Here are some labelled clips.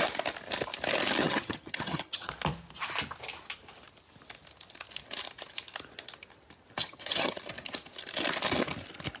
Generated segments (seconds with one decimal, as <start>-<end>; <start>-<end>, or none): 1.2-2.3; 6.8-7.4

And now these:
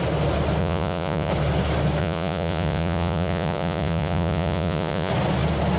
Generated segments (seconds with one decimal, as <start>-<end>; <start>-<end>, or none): 0.6-1.3; 2.0-5.1

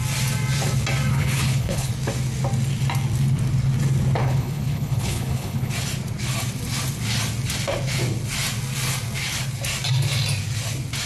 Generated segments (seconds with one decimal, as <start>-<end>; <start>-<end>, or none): 1.1-1.9; 4.2-5.7

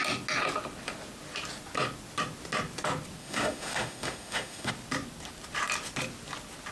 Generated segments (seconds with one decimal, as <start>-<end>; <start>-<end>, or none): 3.2-4.7